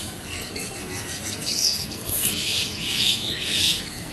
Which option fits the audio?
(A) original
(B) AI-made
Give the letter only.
B